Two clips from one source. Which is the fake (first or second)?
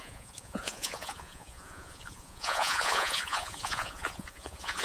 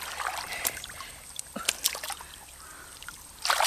first